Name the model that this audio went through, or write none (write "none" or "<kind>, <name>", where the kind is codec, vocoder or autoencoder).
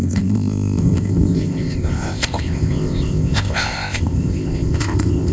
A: codec, ZipCodec